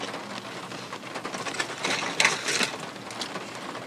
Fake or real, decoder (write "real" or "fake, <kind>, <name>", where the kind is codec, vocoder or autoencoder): real